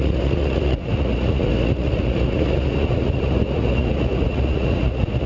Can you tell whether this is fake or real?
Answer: fake